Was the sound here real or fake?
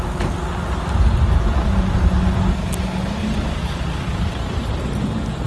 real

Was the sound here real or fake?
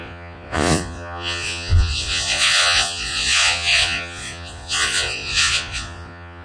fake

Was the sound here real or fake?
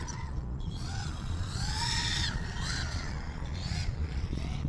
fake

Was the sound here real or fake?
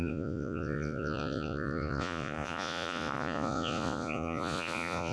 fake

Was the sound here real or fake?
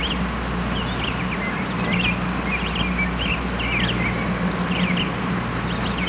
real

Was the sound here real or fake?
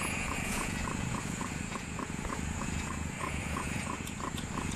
fake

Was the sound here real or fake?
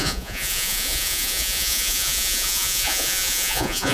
fake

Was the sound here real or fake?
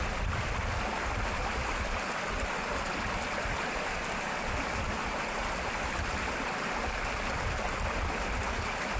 real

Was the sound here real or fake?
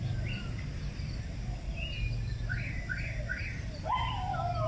real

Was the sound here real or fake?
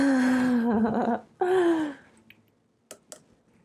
real